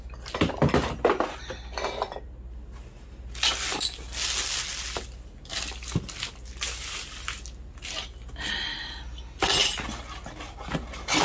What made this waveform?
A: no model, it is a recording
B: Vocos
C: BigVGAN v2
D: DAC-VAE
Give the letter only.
A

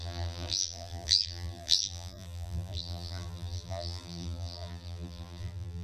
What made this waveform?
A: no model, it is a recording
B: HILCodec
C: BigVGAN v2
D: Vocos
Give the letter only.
C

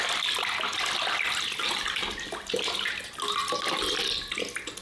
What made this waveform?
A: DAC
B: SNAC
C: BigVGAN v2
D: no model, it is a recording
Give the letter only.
D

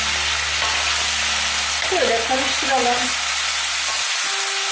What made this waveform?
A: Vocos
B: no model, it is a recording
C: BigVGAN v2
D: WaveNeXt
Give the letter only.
B